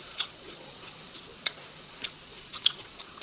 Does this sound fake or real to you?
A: fake